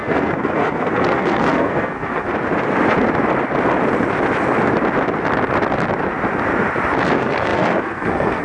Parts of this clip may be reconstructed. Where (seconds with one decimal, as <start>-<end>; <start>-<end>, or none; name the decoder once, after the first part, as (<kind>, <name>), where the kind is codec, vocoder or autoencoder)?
0.0-2.3 (codec, SNAC); 7.1-8.4